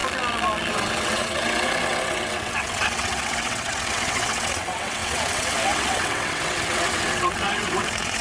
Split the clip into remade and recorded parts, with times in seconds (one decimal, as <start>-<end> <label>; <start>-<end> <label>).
0.0-0.7 recorded; 0.7-8.2 remade